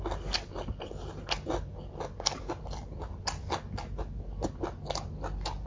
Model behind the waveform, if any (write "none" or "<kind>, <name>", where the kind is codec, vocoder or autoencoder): none